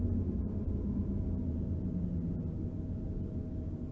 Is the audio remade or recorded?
recorded